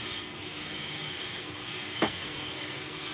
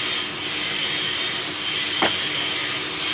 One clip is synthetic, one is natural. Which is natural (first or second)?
second